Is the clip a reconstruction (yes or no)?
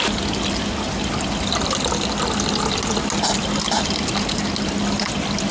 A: no